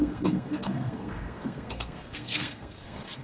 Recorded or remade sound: remade